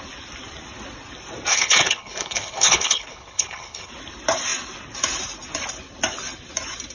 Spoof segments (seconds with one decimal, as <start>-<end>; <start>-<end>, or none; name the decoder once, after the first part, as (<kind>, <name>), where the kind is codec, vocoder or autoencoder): 1.5-3.9 (codec, HILCodec)